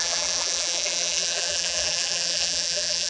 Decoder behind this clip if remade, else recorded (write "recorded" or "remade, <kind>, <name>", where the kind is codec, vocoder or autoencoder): remade, vocoder, BigVGAN v2